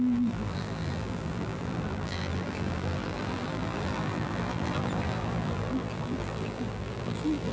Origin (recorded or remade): remade